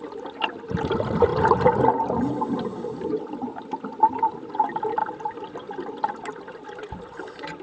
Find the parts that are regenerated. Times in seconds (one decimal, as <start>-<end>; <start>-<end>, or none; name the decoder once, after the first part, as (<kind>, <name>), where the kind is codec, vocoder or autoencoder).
0.0-1.3 (vocoder, BigVGAN v2); 3.2-5.0; 6.5-7.6